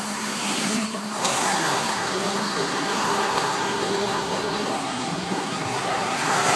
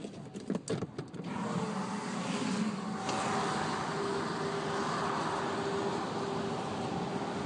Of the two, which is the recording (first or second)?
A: second